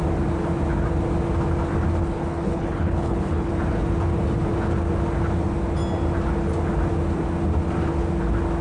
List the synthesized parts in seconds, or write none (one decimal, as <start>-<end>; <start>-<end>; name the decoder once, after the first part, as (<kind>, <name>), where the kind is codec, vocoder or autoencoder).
2.0-3.5 (codec, HILCodec)